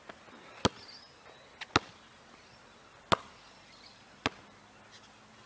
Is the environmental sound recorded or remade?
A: recorded